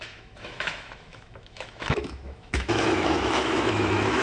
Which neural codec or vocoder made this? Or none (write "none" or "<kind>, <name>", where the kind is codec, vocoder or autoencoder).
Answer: autoencoder, DAC-VAE